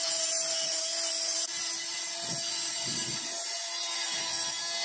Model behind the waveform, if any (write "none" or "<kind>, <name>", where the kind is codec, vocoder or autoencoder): none